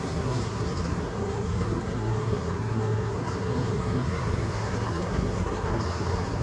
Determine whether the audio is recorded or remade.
remade